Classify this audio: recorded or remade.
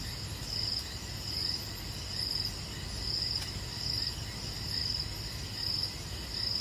recorded